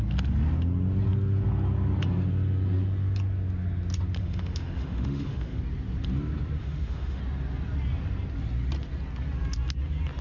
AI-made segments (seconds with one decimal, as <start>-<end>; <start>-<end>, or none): 4.2-5.6; 6.6-7.2